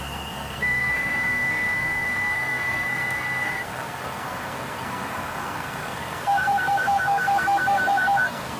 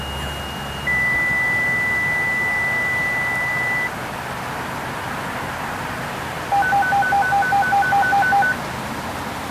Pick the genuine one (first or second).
second